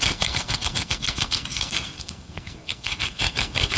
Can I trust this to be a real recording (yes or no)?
no